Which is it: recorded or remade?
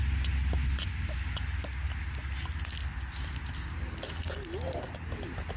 recorded